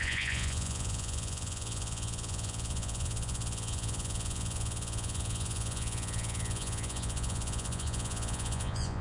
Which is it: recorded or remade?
remade